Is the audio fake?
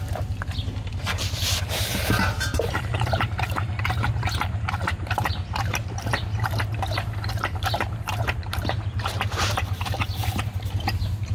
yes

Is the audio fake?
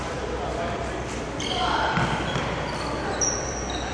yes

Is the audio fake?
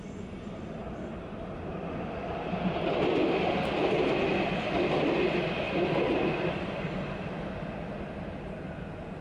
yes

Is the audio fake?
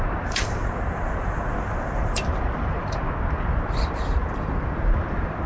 yes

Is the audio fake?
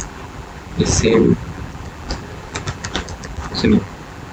yes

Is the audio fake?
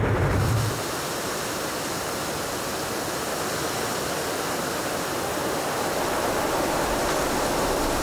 no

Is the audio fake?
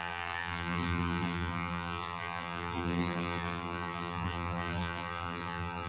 yes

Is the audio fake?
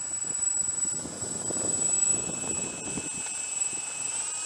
yes